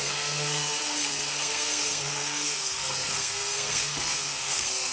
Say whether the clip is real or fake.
fake